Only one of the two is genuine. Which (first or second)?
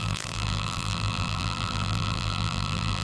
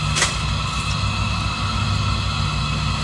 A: second